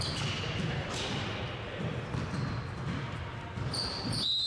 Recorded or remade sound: recorded